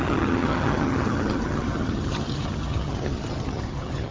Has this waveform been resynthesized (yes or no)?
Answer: yes